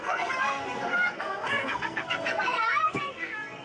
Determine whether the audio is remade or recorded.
remade